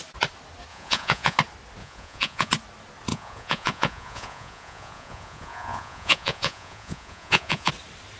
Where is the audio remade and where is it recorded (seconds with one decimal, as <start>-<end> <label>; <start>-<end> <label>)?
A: 0.0-0.7 recorded; 0.7-1.4 remade; 1.4-1.8 recorded; 1.8-2.5 remade; 2.5-3.1 recorded; 3.1-7.7 remade; 7.7-8.2 recorded

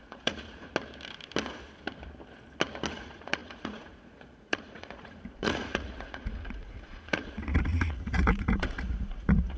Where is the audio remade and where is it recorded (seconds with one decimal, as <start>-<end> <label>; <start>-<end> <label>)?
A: 0.0-0.7 remade; 0.7-2.9 recorded; 2.9-9.6 remade

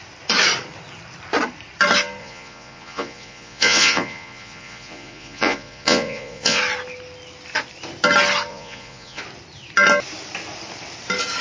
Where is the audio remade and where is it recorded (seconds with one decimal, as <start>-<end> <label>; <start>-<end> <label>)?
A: 0.0-2.2 recorded; 2.2-6.6 remade; 6.6-8.5 recorded; 8.5-9.2 remade; 9.2-11.4 recorded

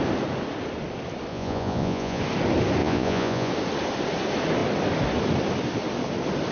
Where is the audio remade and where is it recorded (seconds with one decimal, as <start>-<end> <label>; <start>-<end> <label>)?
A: 0.0-1.3 recorded; 1.3-2.2 remade; 2.2-2.8 recorded; 2.8-3.5 remade; 3.5-6.5 recorded

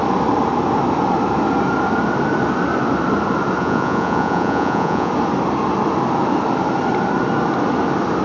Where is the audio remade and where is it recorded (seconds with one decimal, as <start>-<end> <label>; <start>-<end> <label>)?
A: 0.0-3.6 recorded; 3.6-5.1 remade; 5.1-8.2 recorded